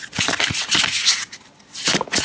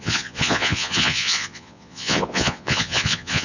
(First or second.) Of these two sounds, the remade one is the second